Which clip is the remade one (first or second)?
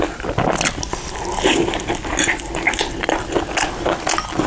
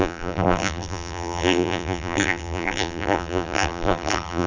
second